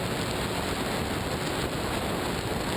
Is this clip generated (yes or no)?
no